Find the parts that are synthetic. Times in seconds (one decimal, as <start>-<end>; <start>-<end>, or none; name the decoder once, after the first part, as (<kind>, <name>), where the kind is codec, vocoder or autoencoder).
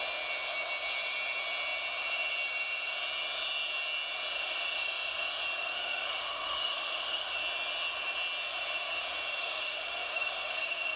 5.6-7.4 (autoencoder, DAC-VAE); 9.4-11.0